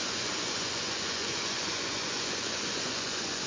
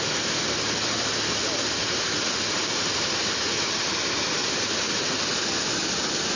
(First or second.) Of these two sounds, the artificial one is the first